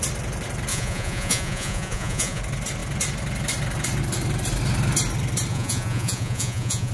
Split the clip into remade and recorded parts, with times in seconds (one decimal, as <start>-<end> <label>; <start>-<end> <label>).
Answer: 0.0-0.7 recorded; 0.7-2.4 remade; 2.4-5.5 recorded; 5.5-6.9 remade